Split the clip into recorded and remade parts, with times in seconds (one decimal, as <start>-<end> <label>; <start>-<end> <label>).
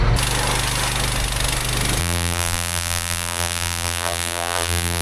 0.0-2.0 recorded; 2.0-5.0 remade